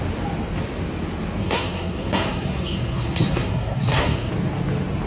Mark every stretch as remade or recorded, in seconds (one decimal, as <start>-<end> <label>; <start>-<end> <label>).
0.0-1.4 recorded; 1.4-4.3 remade; 4.3-5.1 recorded